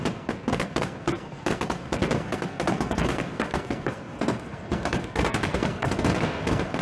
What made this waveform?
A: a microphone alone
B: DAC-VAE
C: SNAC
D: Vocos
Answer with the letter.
C